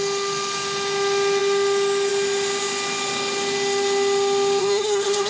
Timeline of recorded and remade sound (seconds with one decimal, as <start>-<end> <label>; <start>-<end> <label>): 0.0-4.6 recorded; 4.6-5.3 remade